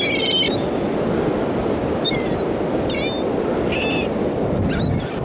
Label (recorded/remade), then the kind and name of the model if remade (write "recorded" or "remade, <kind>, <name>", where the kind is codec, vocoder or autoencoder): recorded